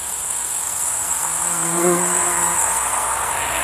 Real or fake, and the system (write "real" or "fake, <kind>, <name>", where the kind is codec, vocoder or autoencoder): fake, codec, SNAC